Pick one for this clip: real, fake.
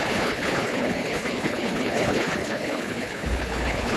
fake